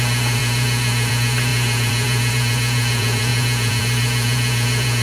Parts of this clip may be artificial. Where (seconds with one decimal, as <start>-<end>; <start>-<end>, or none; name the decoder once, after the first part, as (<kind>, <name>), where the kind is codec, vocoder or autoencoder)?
0.0-5.0 (vocoder, Vocos)